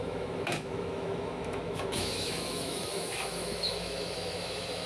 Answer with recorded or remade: remade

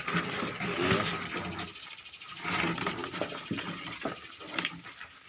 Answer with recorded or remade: recorded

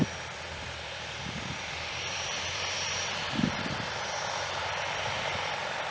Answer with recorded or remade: remade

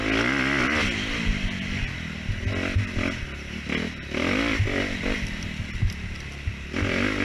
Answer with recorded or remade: recorded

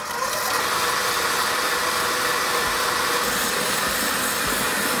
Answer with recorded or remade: recorded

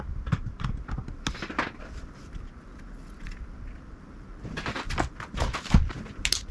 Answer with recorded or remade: recorded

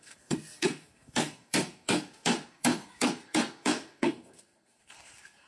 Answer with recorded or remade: remade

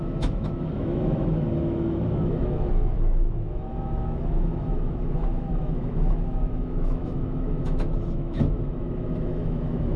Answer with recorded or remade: remade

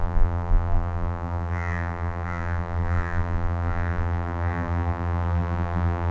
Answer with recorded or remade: remade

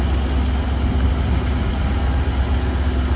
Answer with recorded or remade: recorded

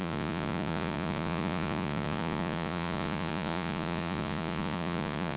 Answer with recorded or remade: remade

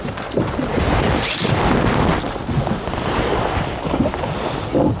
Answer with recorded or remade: recorded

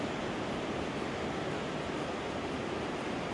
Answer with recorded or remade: recorded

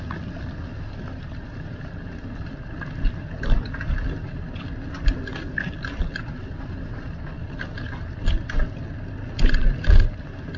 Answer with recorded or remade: recorded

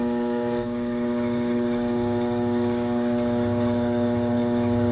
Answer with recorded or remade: remade